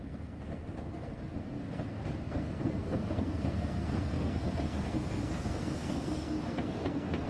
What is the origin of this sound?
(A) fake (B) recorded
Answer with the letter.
A